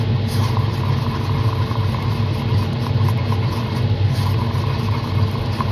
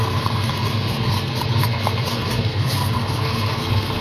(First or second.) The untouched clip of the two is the first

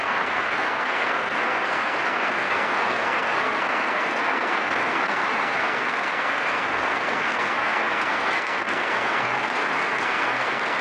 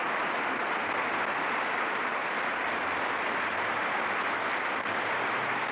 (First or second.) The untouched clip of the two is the second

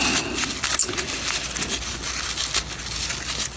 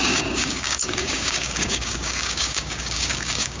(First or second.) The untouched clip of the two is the first